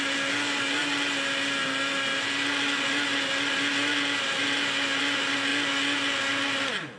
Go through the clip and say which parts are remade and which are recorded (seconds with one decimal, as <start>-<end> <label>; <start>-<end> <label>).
0.0-7.0 recorded